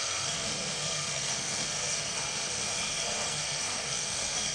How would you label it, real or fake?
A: fake